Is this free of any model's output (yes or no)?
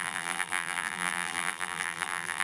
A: no